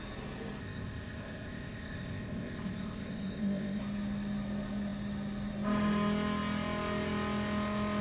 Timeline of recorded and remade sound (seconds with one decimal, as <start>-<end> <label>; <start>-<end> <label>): 0.0-0.6 recorded; 0.6-3.8 remade; 3.8-8.0 recorded